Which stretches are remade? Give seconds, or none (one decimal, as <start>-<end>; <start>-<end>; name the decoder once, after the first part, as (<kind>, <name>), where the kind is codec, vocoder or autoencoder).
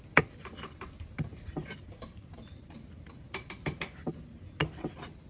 1.6-2.3 (vocoder, BigVGAN v2)